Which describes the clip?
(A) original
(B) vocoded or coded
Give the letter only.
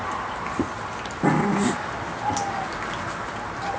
A